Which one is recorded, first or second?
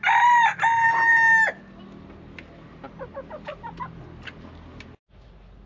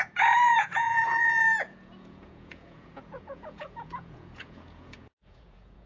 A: first